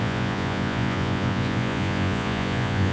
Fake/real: fake